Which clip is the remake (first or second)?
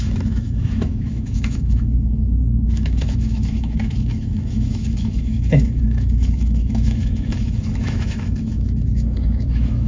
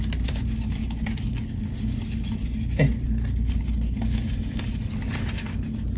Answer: first